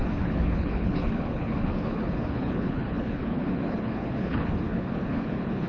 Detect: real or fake fake